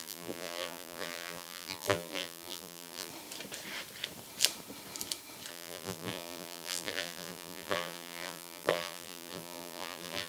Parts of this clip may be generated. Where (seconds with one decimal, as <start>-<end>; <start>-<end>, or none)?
0.0-3.1; 5.5-10.3